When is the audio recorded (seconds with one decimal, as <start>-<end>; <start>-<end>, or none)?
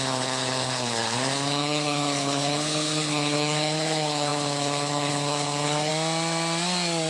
5.9-7.1